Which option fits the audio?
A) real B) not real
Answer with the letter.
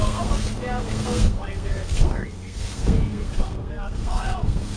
B